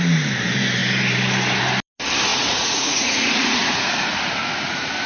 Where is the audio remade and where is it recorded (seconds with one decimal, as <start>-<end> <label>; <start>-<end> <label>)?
0.0-2.3 recorded; 2.3-4.3 remade; 4.3-5.1 recorded

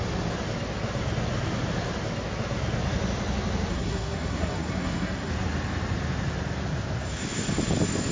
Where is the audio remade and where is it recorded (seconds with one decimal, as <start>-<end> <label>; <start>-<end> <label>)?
0.0-3.7 recorded; 3.7-5.3 remade; 5.3-8.1 recorded

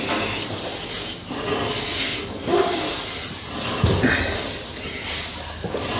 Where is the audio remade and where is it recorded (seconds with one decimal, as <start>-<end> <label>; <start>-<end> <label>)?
0.0-2.1 recorded; 2.1-3.2 remade; 3.2-6.0 recorded

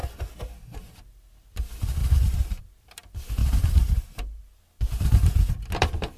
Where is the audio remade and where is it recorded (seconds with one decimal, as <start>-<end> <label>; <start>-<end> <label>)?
0.0-2.0 recorded; 2.0-2.6 remade; 2.6-3.4 recorded; 3.4-4.4 remade; 4.4-6.2 recorded

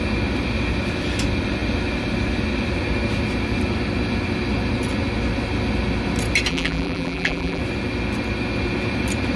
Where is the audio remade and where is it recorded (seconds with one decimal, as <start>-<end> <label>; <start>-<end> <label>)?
0.0-6.5 recorded; 6.5-7.6 remade; 7.6-9.4 recorded

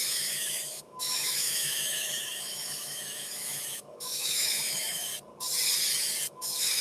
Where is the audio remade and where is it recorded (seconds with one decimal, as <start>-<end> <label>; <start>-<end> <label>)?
0.0-5.1 remade; 5.1-6.3 recorded; 6.3-6.8 remade

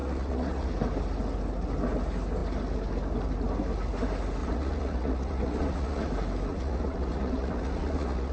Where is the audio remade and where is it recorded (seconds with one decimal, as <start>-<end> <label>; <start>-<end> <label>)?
0.0-0.7 remade; 0.7-4.4 recorded; 4.4-6.1 remade; 6.1-6.5 recorded; 6.5-8.3 remade